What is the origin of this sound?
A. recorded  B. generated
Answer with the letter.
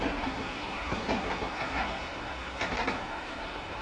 B